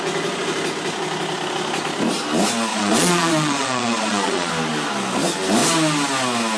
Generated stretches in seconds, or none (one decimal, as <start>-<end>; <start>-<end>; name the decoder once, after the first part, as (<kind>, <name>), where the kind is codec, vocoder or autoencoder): 2.7-4.5 (vocoder, Vocos)